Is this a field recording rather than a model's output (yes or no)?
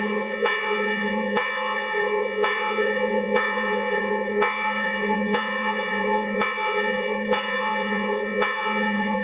no